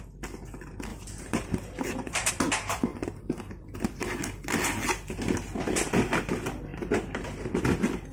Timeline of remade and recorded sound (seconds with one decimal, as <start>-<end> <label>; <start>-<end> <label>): 0.0-0.9 recorded; 0.9-2.3 remade; 2.3-6.7 recorded; 6.7-7.6 remade; 7.6-8.1 recorded